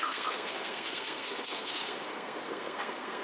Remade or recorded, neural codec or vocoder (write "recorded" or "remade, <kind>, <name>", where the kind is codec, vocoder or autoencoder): remade, codec, SNAC